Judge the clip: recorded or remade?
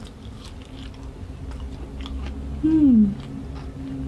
recorded